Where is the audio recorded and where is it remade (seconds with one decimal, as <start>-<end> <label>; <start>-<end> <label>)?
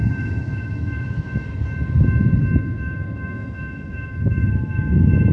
0.0-1.4 remade; 1.4-2.6 recorded; 2.6-5.3 remade